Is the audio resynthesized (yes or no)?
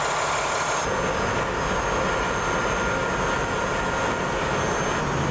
no